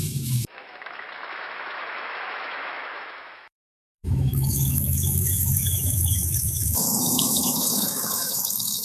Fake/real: fake